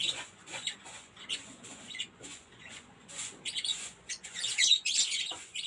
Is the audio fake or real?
fake